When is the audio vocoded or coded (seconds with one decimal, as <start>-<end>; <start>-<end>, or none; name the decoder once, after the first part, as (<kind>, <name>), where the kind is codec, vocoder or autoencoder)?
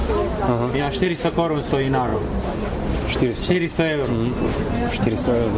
none